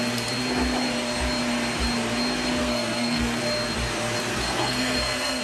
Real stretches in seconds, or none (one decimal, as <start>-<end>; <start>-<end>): 0.0-2.6; 3.4-4.3